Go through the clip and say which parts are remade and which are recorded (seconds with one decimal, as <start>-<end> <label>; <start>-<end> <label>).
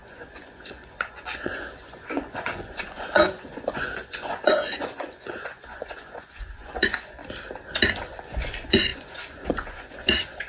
0.0-7.2 remade; 7.2-8.2 recorded; 8.2-10.5 remade